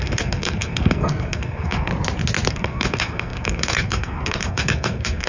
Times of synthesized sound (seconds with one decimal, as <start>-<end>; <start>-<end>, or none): 0.0-1.9; 2.5-5.3